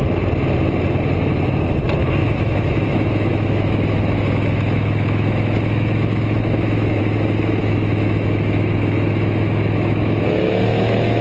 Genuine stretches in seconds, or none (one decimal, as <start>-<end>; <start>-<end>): 0.0-2.2; 7.0-7.6